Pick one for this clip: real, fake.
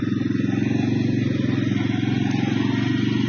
real